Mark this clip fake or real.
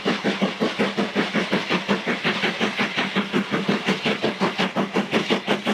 real